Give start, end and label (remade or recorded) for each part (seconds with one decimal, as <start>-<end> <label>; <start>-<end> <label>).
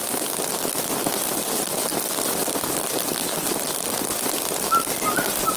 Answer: 0.0-5.6 recorded